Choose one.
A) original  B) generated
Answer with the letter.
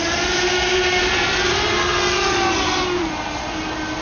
A